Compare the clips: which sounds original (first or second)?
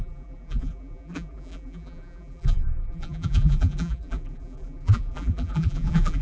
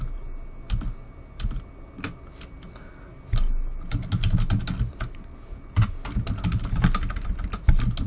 second